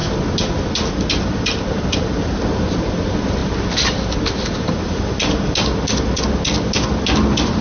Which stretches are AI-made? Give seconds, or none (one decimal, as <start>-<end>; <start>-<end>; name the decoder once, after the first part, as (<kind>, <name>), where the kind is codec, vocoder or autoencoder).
none

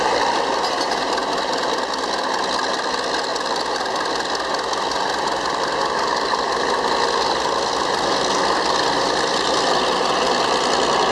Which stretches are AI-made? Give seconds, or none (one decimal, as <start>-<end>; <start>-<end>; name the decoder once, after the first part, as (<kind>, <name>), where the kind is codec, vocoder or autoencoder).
none

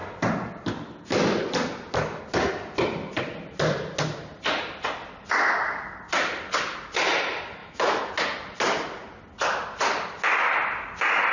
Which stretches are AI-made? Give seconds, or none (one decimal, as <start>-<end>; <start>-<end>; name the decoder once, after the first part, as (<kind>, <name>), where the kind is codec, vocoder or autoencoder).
7.6-8.1 (autoencoder, DAC-VAE)

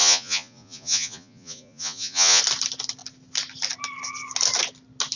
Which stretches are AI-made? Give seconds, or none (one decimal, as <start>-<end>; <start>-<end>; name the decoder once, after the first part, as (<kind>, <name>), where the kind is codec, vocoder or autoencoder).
0.0-2.4 (vocoder, Vocos)

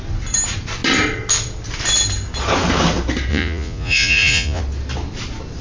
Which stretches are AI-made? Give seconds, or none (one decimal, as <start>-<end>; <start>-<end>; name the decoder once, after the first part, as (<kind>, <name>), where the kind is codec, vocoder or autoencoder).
3.3-4.6 (vocoder, Vocos)